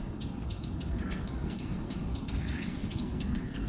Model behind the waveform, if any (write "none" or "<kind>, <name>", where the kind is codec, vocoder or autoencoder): codec, SNAC